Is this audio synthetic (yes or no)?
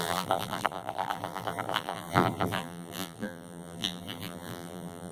yes